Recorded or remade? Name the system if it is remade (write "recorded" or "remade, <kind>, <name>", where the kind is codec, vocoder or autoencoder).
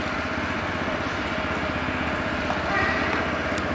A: recorded